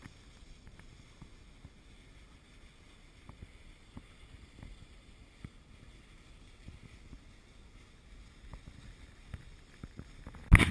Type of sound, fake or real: real